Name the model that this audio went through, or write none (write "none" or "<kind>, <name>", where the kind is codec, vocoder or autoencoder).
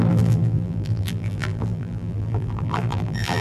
vocoder, BigVGAN v2